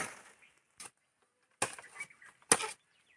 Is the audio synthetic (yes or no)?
no